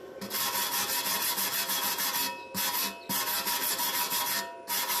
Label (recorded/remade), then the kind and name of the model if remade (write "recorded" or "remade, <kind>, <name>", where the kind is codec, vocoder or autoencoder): recorded